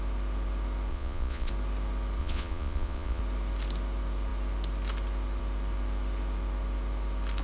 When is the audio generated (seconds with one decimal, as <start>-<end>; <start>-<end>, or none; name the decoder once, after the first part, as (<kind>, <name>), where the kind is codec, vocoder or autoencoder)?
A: 0.9-1.5 (vocoder, Vocos); 2.2-3.2